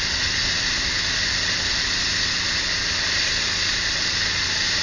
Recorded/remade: recorded